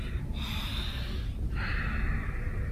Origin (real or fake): real